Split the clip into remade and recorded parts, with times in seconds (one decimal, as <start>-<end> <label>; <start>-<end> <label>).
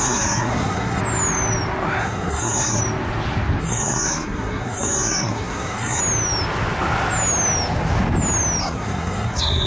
0.0-1.0 remade; 1.0-2.0 recorded; 2.0-2.8 remade; 2.8-3.6 recorded; 3.6-6.0 remade; 6.0-8.6 recorded; 8.6-9.7 remade